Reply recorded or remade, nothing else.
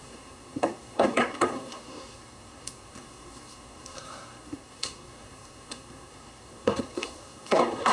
remade